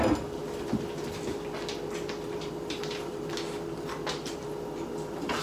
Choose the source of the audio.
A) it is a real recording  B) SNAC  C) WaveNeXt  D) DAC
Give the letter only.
A